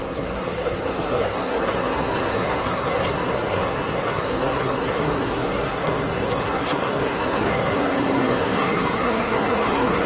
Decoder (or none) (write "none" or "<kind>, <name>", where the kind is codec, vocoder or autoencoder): codec, SNAC